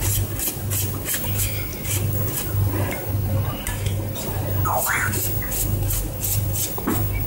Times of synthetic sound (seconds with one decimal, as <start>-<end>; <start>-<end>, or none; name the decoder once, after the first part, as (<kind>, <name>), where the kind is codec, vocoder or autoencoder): none